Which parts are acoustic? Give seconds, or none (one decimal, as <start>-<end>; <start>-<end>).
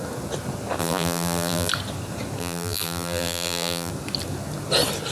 0.0-0.8; 1.7-2.4; 3.9-5.1